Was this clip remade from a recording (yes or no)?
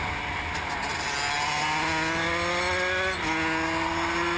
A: no